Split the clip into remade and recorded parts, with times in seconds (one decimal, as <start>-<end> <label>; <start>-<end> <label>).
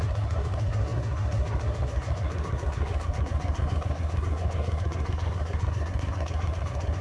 0.0-7.0 remade